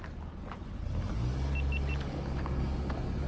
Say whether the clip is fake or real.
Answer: real